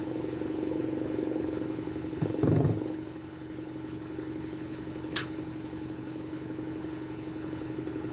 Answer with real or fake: fake